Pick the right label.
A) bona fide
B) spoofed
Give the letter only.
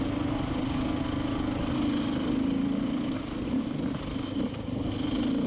A